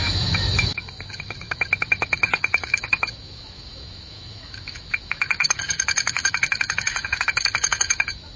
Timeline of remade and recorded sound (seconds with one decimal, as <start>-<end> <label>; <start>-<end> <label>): 0.0-8.4 remade

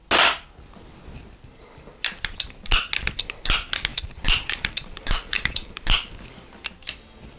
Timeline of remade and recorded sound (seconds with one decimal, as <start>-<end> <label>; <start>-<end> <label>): 0.0-3.9 recorded; 3.9-6.1 remade; 6.1-7.4 recorded

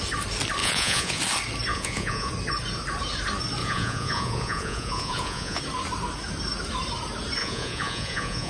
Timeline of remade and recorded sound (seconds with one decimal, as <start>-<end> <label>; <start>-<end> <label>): 0.0-0.6 recorded; 0.6-1.2 remade; 1.2-1.7 recorded; 1.7-2.3 remade; 2.3-3.6 recorded; 3.6-5.6 remade; 5.6-7.4 recorded; 7.4-8.5 remade

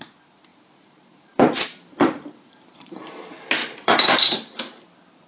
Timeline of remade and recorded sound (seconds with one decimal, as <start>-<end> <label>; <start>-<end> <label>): 0.0-0.5 recorded; 0.5-3.0 remade; 3.0-3.6 recorded; 3.6-4.8 remade; 4.8-5.3 recorded

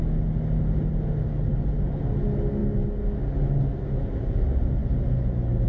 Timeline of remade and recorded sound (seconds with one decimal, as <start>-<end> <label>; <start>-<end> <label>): 0.0-5.7 recorded

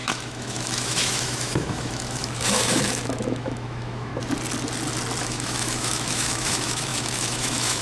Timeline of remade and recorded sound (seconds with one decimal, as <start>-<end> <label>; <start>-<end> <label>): 0.0-4.1 remade; 4.1-5.2 recorded; 5.2-7.8 remade